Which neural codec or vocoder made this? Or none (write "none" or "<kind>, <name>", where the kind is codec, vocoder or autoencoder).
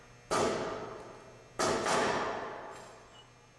none